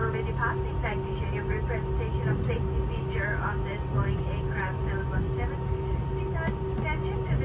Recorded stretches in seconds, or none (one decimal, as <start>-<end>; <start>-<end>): 0.0-7.4